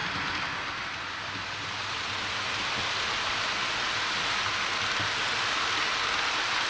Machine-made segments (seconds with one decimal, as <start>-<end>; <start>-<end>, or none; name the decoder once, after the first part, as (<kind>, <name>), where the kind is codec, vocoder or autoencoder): none

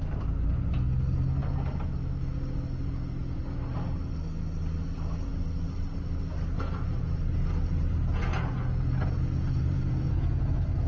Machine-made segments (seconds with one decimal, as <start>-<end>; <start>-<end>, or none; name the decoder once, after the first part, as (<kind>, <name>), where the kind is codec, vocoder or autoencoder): 8.1-10.9 (vocoder, Vocos)